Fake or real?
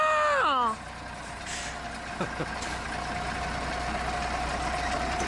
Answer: real